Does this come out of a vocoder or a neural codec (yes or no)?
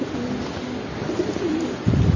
no